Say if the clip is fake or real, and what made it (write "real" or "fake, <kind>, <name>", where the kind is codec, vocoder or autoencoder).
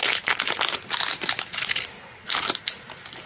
real